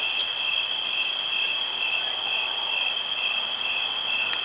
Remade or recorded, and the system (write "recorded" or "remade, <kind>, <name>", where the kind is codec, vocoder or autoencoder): recorded